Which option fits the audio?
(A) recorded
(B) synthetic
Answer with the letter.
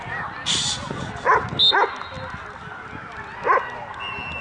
A